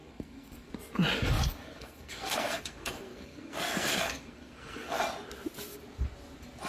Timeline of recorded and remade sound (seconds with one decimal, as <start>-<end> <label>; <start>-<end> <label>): 0.0-0.7 remade; 0.7-1.4 recorded; 1.4-5.0 remade; 5.0-6.7 recorded